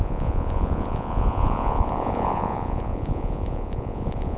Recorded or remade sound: remade